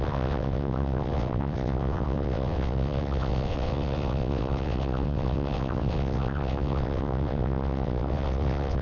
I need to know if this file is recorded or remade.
remade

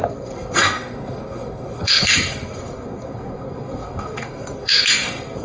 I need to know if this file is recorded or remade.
remade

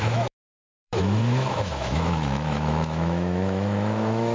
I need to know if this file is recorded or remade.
remade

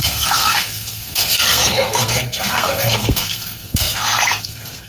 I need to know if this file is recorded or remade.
remade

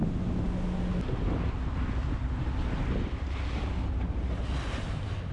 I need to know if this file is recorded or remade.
recorded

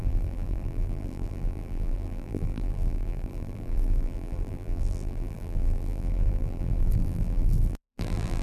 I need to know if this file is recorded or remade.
remade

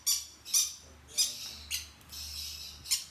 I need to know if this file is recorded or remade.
recorded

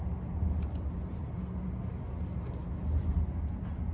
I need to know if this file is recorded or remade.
recorded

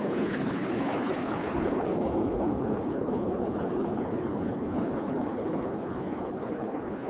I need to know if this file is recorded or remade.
remade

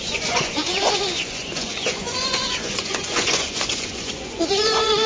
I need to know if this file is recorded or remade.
remade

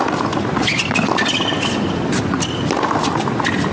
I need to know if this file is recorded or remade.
recorded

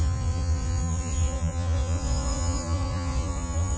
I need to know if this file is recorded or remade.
remade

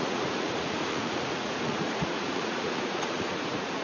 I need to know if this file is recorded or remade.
remade